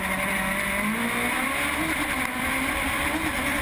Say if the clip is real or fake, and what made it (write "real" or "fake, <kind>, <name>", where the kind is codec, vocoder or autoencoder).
real